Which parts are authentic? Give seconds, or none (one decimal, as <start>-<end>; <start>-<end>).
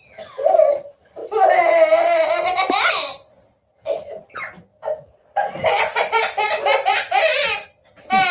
0.0-8.3